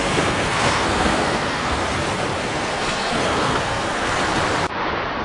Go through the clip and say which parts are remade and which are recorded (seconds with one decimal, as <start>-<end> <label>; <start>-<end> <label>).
0.0-1.8 remade; 1.8-2.4 recorded; 2.4-4.3 remade; 4.3-5.2 recorded